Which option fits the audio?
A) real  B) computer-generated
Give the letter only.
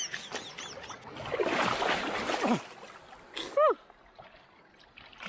A